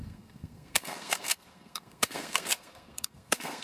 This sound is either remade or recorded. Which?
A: remade